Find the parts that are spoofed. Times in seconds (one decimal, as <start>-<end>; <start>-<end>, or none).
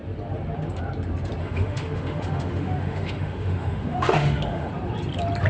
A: 1.4-4.7